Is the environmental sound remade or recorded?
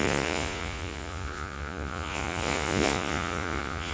remade